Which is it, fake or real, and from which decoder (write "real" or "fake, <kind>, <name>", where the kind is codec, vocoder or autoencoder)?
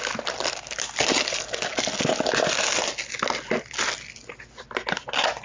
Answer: real